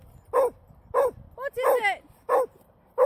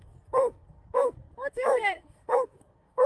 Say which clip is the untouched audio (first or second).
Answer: first